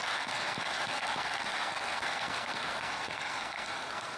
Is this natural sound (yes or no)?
no